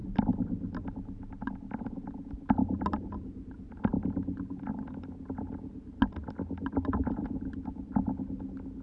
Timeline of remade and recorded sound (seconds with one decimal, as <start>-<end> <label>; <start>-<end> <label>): 0.0-8.8 recorded